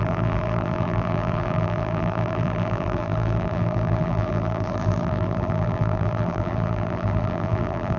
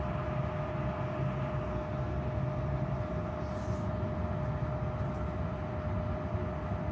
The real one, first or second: second